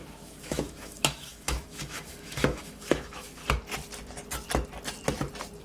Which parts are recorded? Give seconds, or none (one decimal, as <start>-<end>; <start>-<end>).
3.4-5.6